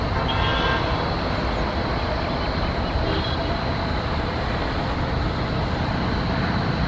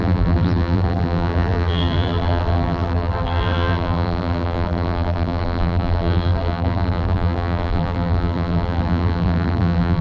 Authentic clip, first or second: first